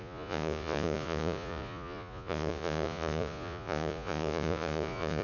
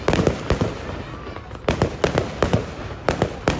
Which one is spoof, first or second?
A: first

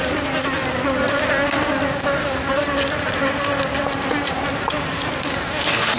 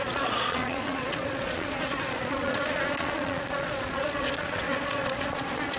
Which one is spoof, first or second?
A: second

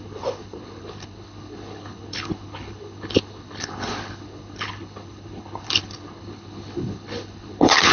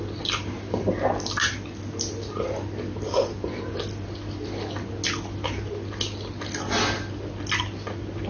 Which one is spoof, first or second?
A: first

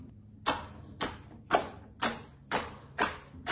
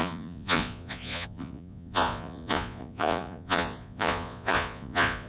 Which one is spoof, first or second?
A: second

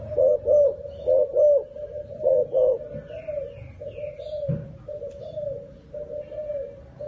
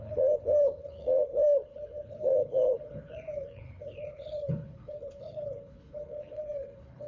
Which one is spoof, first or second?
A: second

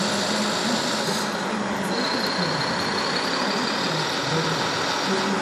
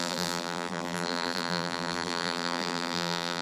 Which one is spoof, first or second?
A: second